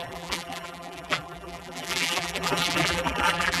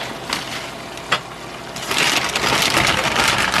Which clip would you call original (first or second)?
second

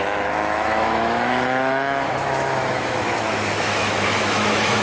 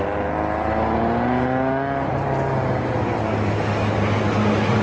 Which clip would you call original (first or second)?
second